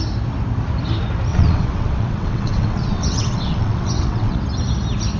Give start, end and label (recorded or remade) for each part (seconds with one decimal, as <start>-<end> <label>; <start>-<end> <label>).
0.0-1.3 recorded; 1.3-4.4 remade; 4.4-5.2 recorded